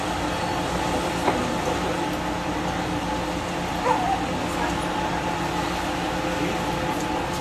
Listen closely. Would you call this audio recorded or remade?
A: recorded